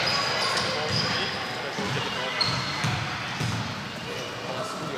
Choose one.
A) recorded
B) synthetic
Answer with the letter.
A